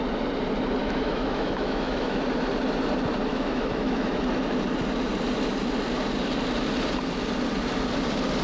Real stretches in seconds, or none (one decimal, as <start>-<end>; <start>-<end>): 0.0-0.8; 2.2-3.3; 4.2-8.4